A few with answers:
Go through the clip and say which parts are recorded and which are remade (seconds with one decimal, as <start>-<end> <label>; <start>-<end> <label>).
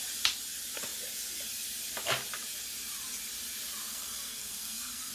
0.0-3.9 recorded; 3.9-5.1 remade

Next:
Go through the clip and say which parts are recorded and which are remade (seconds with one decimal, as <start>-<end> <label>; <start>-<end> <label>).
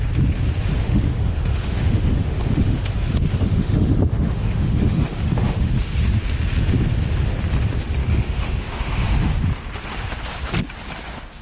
0.0-0.7 recorded; 0.7-5.7 remade; 5.7-8.0 recorded; 8.0-9.3 remade; 9.3-11.4 recorded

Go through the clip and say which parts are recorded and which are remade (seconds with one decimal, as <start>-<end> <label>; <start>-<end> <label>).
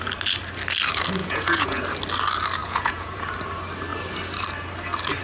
0.0-1.2 recorded; 1.2-1.8 remade; 1.8-2.6 recorded; 2.6-3.2 remade; 3.2-5.2 recorded